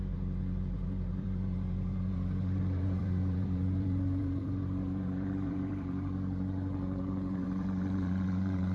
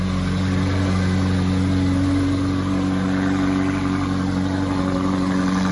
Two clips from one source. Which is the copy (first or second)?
first